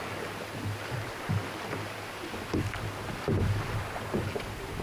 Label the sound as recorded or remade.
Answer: recorded